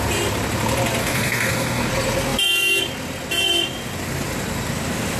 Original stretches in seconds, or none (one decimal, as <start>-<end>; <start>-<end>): 0.0-1.0; 1.9-5.2